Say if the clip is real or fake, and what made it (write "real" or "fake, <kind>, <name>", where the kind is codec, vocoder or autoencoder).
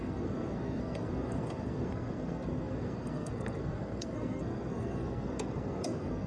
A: fake, codec, SNAC